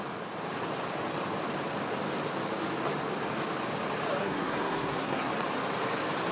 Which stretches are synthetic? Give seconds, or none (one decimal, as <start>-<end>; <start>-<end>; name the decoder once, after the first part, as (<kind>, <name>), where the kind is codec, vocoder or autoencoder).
4.2-5.3 (codec, SNAC)